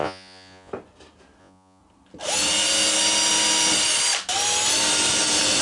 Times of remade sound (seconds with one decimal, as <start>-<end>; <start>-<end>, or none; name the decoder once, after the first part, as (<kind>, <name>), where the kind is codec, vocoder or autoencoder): 0.0-0.7 (vocoder, Vocos); 1.4-1.8